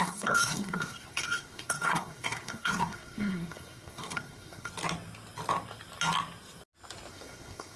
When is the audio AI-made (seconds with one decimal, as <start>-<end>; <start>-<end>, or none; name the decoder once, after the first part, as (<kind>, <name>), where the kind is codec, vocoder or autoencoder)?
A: 0.0-4.7 (codec, SNAC); 7.1-7.8